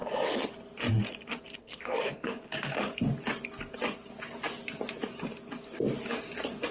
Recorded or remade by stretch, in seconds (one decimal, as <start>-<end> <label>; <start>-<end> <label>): 0.0-1.6 recorded; 1.6-2.4 remade; 2.4-6.7 recorded